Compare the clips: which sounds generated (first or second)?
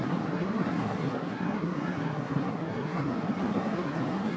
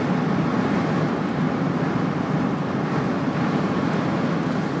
first